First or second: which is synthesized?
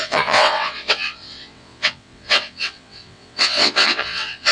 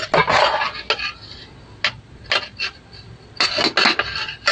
first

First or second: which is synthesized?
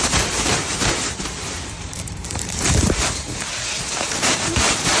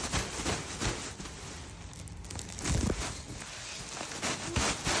first